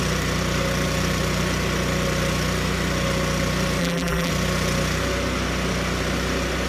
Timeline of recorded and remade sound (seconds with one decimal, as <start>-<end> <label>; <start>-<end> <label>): 0.0-3.8 recorded; 3.8-4.3 remade; 4.3-6.7 recorded